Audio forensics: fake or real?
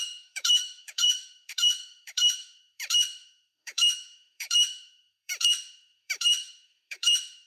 fake